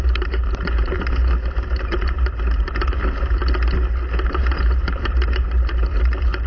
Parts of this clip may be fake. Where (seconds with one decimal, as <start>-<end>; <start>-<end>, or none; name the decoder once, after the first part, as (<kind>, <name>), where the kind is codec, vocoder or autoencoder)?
0.0-3.4 (vocoder, BigVGAN v2); 4.1-6.5

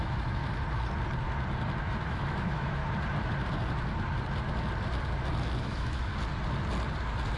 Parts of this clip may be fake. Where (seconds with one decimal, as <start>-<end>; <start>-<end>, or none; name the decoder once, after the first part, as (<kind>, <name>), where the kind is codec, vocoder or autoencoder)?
0.0-0.4 (autoencoder, DAC-VAE); 1.8-2.8; 5.6-6.1

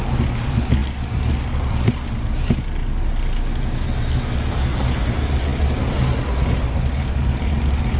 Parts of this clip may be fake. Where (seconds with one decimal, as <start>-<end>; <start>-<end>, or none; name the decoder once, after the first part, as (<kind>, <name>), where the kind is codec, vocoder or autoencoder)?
none

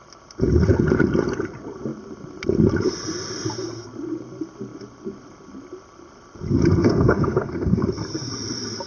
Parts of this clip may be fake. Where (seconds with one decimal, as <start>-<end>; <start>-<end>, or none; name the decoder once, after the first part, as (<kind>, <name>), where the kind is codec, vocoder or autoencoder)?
6.8-7.8 (codec, SNAC)

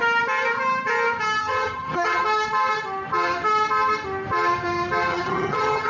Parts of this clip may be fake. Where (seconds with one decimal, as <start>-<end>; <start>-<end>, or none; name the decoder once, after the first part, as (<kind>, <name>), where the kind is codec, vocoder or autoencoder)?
1.4-2.2 (vocoder, HiFi-GAN); 5.1-5.9